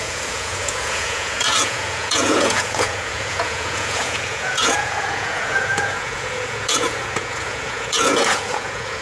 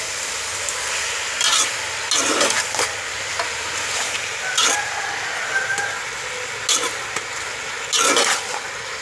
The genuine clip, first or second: second